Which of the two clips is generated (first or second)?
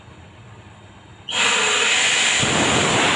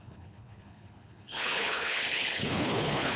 second